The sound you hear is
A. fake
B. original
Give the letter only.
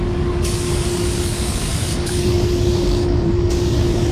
A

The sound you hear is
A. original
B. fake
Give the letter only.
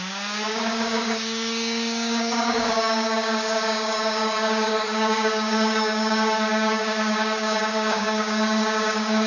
B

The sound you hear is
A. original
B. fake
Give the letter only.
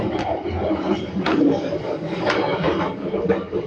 B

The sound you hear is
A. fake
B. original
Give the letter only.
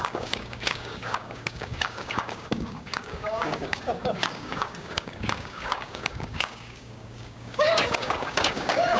A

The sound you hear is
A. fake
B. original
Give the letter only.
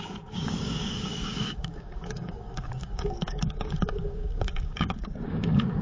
A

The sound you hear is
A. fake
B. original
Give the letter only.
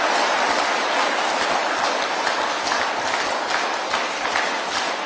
B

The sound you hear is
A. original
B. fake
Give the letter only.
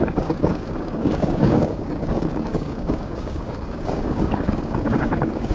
B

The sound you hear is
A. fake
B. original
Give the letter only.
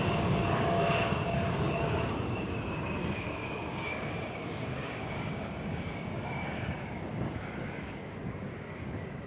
A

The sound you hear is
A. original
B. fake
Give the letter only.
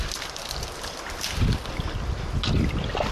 A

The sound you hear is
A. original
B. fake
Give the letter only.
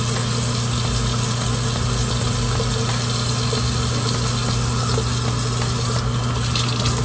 A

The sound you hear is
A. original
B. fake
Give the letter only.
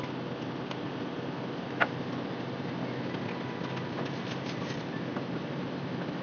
A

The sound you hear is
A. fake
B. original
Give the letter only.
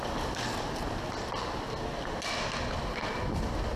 B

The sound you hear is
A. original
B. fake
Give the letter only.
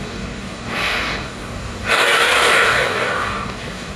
B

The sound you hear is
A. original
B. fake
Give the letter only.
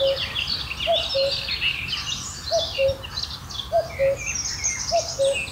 A